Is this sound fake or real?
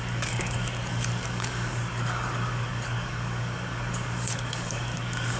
fake